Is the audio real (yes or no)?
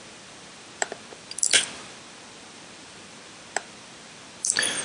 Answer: no